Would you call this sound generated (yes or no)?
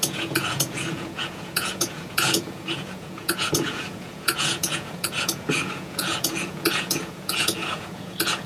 yes